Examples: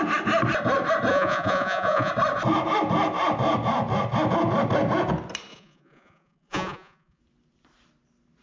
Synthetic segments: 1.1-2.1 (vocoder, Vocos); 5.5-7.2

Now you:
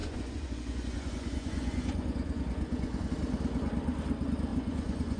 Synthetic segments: 0.0-3.1 (vocoder, Vocos); 4.5-5.2

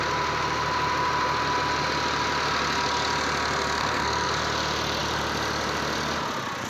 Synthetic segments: 3.8-4.3 (codec, SNAC)

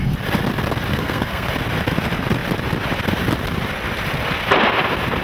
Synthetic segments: 0.9-1.5 (codec, SNAC)

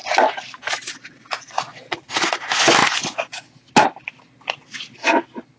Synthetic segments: none

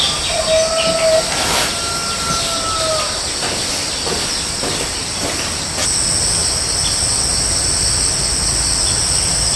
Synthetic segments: none